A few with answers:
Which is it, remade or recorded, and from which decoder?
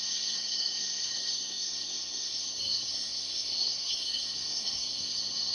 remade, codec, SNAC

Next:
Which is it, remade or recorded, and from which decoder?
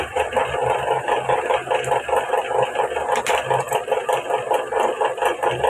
recorded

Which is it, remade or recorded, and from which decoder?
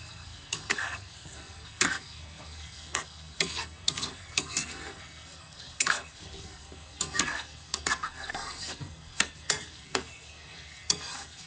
remade, codec, SNAC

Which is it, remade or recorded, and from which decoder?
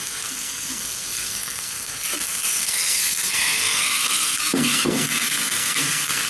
remade, codec, SNAC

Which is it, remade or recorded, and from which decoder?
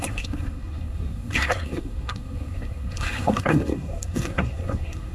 remade, codec, SNAC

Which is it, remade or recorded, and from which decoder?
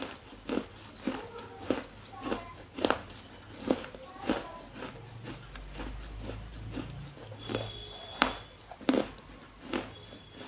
recorded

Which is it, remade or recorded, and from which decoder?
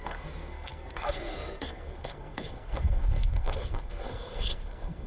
remade, codec, SNAC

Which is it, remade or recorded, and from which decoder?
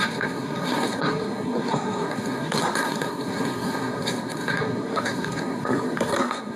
remade, codec, SNAC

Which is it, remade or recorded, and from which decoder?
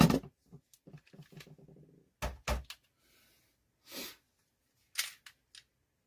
recorded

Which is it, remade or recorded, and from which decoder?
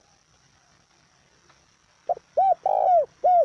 recorded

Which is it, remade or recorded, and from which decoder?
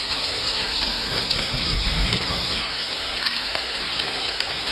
remade, codec, SNAC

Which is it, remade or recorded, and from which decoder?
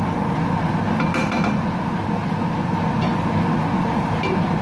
recorded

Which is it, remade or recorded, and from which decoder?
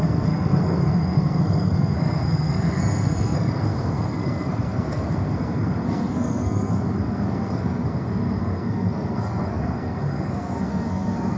remade, codec, SNAC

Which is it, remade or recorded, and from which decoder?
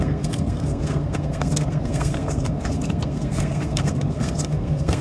remade, codec, SNAC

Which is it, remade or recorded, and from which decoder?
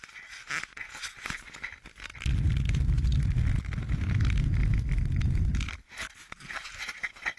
recorded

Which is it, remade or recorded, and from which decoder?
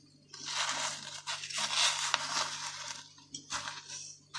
recorded